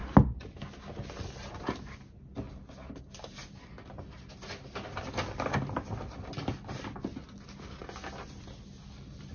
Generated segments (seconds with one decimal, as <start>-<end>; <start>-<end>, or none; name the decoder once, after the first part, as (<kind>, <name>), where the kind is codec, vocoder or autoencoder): none

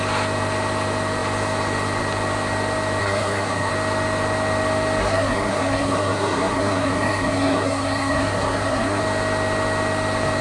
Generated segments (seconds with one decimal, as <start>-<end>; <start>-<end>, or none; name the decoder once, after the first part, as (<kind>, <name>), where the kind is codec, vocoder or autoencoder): 3.0-3.7 (codec, SNAC); 5.0-9.0

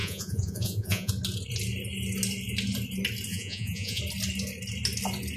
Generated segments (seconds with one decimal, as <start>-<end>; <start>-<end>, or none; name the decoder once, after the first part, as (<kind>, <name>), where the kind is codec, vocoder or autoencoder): 0.0-1.1 (vocoder, Vocos); 3.3-4.0

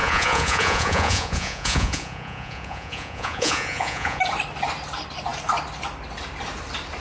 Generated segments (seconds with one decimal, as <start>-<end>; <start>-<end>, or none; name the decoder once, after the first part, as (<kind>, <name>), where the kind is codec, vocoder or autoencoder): 0.0-4.2 (vocoder, Vocos)